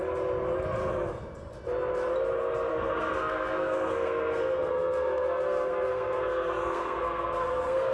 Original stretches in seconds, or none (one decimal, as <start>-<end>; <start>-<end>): 0.0-2.7